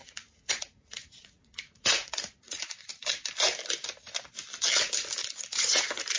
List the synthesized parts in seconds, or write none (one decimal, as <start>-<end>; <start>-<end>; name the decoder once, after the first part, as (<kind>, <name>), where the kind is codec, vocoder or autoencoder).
0.0-2.9 (vocoder, Vocos); 5.2-6.2